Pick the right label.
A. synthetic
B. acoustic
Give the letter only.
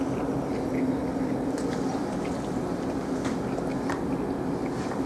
B